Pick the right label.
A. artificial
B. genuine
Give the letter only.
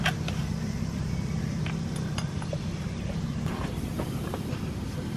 A